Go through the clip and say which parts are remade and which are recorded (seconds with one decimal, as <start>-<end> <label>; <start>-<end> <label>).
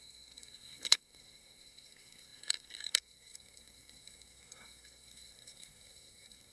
0.0-6.5 remade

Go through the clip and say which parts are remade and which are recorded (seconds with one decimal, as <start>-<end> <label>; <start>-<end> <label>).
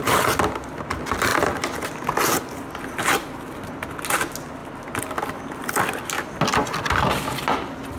0.0-8.0 recorded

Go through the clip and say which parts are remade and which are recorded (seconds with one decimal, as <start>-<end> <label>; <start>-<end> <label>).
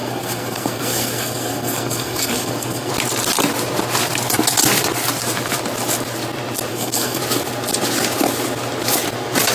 0.0-2.9 remade; 2.9-6.7 recorded; 6.7-7.2 remade; 7.2-9.5 recorded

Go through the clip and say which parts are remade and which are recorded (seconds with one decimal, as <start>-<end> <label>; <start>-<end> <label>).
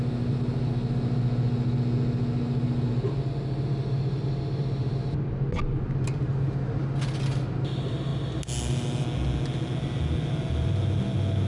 0.0-11.5 recorded